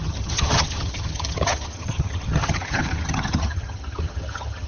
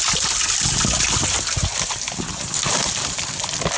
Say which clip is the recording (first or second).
second